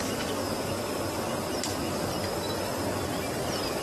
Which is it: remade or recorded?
recorded